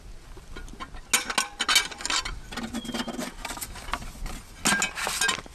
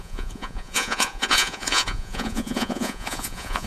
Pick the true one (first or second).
first